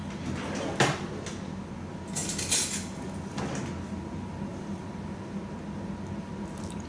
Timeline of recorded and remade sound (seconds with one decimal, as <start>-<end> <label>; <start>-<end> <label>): 0.0-4.5 recorded; 4.5-5.4 remade; 5.4-6.9 recorded